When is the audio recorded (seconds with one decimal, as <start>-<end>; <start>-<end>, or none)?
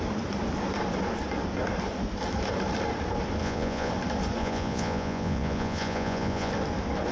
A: 0.0-3.4; 3.9-4.4; 6.5-7.1